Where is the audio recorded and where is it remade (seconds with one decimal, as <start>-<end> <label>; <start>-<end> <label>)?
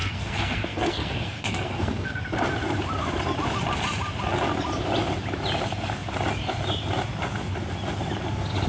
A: 0.0-2.2 remade; 2.2-8.7 recorded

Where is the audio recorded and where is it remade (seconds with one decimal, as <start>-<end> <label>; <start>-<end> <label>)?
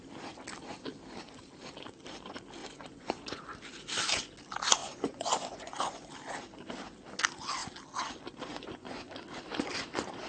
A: 0.0-2.6 recorded; 2.6-3.4 remade; 3.4-4.8 recorded; 4.8-6.1 remade; 6.1-8.5 recorded; 8.5-9.1 remade; 9.1-10.3 recorded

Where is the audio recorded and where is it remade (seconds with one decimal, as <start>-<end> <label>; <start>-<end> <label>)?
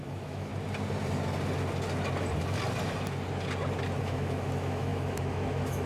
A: 0.0-0.5 remade; 0.5-4.0 recorded; 4.0-5.9 remade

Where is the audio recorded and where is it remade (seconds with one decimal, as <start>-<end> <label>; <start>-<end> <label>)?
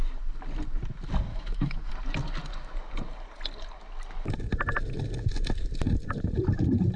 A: 0.0-1.3 recorded; 1.3-1.9 remade; 1.9-7.0 recorded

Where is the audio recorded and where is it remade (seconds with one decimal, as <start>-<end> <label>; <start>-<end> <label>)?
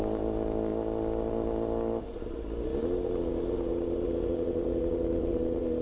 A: 0.0-5.8 recorded